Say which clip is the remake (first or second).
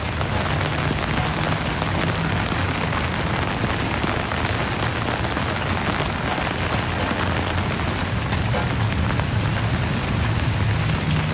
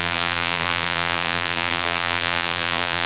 second